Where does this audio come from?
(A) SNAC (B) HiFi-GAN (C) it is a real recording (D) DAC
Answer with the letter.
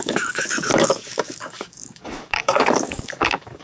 D